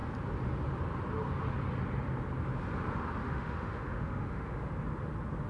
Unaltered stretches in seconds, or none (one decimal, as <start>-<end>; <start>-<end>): 0.0-3.2; 4.7-5.5